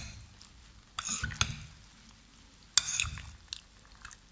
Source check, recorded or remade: recorded